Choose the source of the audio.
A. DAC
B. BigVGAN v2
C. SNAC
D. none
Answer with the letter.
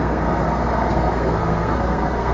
C